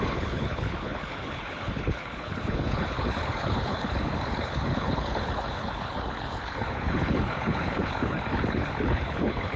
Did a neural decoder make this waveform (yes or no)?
yes